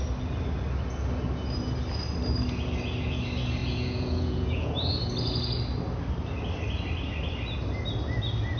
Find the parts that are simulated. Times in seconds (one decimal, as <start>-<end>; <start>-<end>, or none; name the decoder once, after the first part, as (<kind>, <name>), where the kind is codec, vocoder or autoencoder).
3.6-4.7 (vocoder, Vocos)